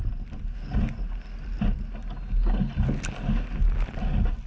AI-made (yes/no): no